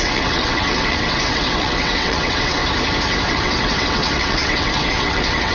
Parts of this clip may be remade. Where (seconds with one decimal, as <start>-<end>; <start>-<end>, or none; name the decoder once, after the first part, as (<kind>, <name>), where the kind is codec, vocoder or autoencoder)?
0.0-2.6 (vocoder, WaveNeXt); 3.3-5.5